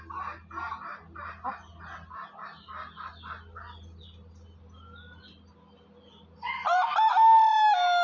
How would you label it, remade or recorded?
recorded